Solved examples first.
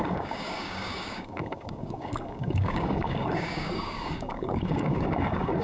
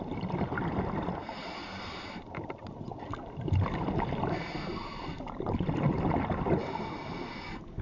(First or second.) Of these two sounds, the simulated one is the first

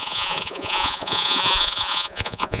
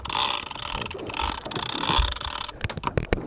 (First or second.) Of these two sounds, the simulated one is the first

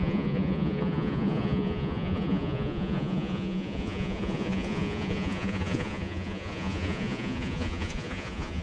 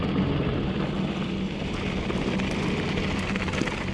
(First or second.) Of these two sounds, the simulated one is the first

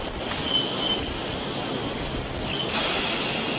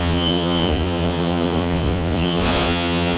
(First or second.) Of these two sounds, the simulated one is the second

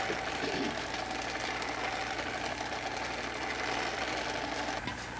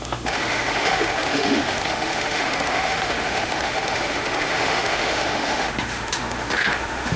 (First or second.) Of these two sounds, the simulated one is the second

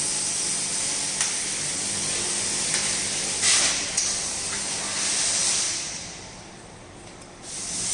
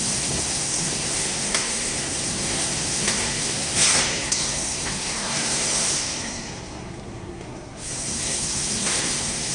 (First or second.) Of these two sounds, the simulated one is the second